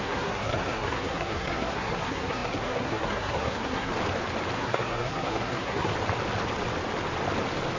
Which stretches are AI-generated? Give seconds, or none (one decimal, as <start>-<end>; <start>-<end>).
0.0-3.9; 4.6-5.9